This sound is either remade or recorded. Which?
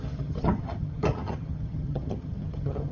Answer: remade